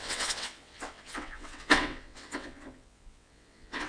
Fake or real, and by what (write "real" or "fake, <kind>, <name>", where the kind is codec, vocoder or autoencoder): fake, vocoder, WaveNeXt